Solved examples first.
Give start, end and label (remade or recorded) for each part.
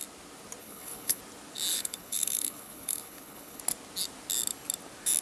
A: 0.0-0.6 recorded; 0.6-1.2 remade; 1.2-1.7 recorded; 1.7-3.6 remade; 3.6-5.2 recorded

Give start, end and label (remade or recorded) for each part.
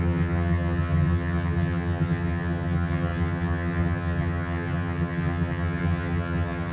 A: 0.0-6.7 remade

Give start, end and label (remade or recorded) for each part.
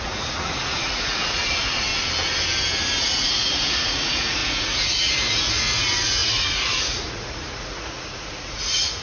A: 0.0-1.9 remade; 1.9-3.0 recorded; 3.0-9.0 remade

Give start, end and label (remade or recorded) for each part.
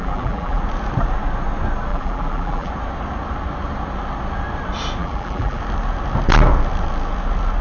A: 0.0-0.6 remade; 0.6-1.9 recorded; 1.9-2.7 remade; 2.7-5.0 recorded; 5.0-5.6 remade; 5.6-7.6 recorded